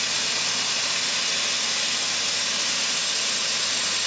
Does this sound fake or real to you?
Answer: real